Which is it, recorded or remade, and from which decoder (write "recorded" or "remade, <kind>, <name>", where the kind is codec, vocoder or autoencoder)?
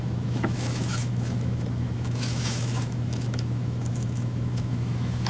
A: remade, autoencoder, DAC-VAE